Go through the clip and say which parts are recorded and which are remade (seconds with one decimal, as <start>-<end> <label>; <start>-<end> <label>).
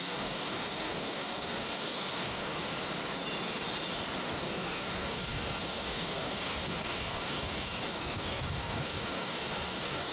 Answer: 0.0-2.7 remade; 2.7-4.4 recorded; 4.4-10.1 remade